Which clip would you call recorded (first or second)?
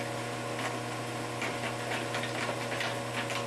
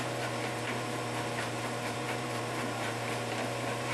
first